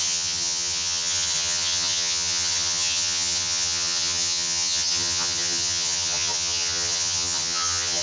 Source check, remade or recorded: remade